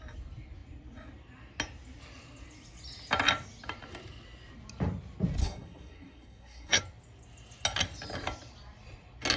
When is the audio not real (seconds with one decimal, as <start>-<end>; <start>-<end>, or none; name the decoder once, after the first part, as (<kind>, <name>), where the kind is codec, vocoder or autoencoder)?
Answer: 5.4-6.8 (codec, SNAC)